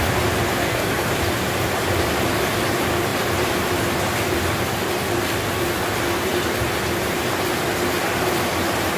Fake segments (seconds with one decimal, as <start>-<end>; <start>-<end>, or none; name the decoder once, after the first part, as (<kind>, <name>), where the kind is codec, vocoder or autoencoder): 0.6-1.1 (codec, SNAC)